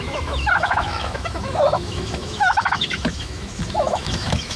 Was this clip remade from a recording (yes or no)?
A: yes